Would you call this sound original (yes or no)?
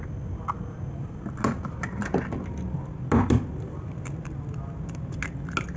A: yes